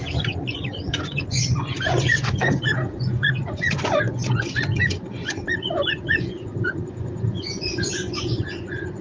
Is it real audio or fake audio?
fake